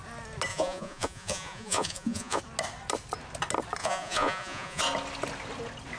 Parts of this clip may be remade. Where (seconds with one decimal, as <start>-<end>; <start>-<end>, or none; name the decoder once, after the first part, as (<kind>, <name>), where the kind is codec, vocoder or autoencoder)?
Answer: 0.5-2.4 (vocoder, Vocos); 3.8-4.8